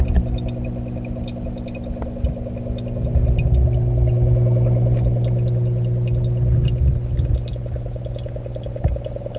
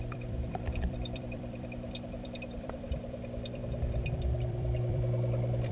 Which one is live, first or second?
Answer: first